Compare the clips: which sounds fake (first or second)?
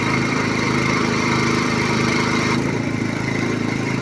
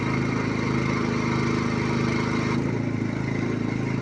first